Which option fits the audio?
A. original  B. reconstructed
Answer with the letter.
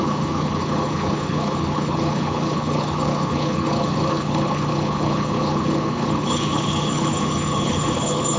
B